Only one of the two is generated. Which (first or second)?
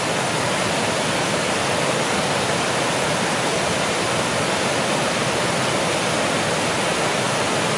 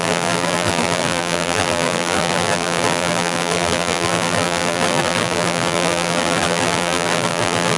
second